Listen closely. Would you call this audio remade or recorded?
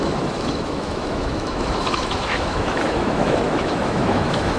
remade